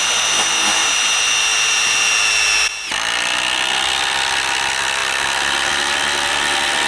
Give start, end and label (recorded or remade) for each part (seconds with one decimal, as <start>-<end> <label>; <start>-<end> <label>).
0.0-6.9 recorded